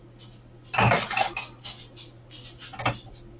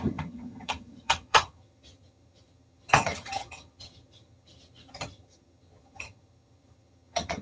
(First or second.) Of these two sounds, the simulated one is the second